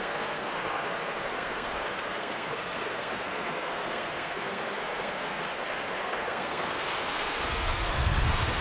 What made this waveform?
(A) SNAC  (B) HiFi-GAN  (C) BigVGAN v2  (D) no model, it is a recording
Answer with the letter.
A